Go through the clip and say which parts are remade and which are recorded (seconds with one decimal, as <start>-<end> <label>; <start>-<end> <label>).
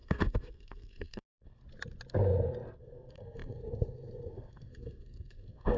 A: 0.0-1.6 remade; 1.6-2.8 recorded; 2.8-5.8 remade